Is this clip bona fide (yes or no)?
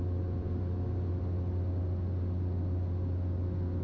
yes